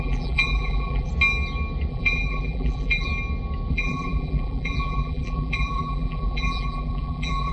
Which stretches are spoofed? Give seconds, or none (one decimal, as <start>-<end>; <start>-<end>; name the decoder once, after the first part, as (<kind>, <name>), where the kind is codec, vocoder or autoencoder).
0.0-1.1 (vocoder, BigVGAN v2); 1.9-3.1; 3.7-7.5